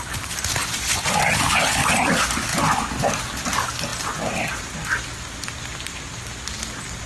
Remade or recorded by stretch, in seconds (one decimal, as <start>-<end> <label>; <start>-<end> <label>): 0.0-7.1 recorded